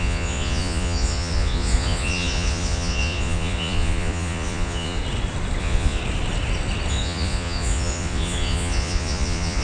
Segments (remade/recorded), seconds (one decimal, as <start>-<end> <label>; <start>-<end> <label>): 0.0-5.0 remade; 5.0-5.6 recorded; 5.6-6.0 remade; 6.0-6.9 recorded; 6.9-9.6 remade